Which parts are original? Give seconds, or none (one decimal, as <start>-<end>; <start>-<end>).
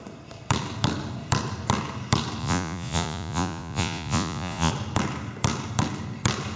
0.0-2.4; 4.7-6.6